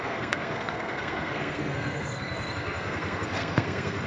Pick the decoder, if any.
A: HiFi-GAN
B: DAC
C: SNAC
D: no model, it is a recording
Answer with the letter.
C